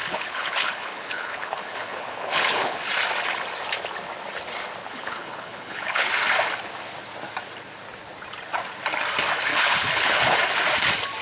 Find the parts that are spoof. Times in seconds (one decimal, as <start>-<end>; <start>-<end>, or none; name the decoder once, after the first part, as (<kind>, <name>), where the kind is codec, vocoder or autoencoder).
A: 0.0-2.9 (codec, HILCodec); 4.8-6.1; 9.5-10.4

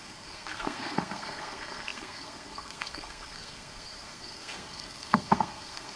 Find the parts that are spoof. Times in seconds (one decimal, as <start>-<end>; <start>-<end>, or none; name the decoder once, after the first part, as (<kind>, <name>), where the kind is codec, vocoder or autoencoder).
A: 0.0-6.0 (codec, SNAC)

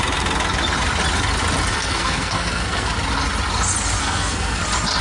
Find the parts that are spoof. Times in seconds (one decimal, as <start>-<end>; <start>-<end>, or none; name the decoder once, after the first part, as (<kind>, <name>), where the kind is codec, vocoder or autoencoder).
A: 1.7-2.9 (codec, SNAC); 4.0-4.6

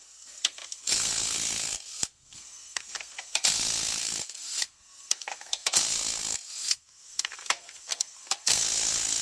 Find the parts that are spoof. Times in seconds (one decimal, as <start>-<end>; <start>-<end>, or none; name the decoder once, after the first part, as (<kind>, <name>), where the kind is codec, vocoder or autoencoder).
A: 0.0-9.2 (codec, SNAC)

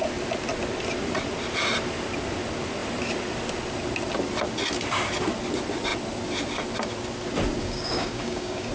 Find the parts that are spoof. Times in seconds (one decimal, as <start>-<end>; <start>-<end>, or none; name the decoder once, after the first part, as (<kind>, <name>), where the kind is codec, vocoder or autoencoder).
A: 7.6-8.7 (codec, DAC)

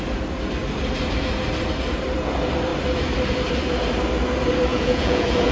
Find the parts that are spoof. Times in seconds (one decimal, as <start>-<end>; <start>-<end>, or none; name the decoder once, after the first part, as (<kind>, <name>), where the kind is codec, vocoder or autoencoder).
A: 4.7-5.5 (vocoder, Vocos)

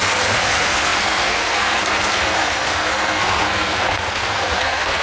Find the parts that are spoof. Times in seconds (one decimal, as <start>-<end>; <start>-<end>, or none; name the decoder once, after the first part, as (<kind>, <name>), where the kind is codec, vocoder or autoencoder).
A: 0.0-5.0 (codec, SNAC)

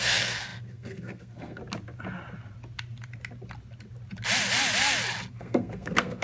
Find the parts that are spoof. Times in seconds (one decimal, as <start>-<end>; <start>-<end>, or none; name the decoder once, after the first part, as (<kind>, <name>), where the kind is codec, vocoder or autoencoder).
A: 0.0-1.6 (codec, SNAC); 5.3-6.2